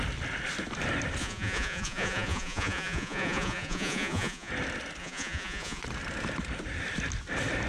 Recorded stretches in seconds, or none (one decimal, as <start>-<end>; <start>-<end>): 0.0-1.2; 4.5-5.0; 5.8-7.7